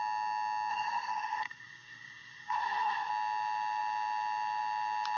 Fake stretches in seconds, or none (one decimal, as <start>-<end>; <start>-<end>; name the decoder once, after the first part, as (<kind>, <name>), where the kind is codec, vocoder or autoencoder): 0.7-3.1 (codec, SNAC)